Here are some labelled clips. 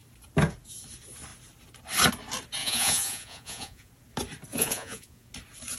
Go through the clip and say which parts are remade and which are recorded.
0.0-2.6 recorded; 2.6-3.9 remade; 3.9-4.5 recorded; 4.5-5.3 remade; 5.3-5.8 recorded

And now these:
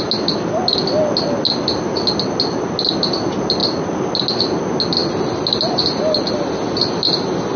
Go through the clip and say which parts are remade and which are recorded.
0.0-7.6 recorded

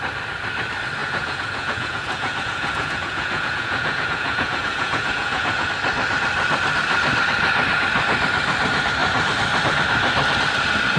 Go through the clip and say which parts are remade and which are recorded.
0.0-1.0 recorded; 1.0-5.7 remade; 5.7-11.0 recorded